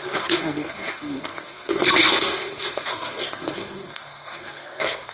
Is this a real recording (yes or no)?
no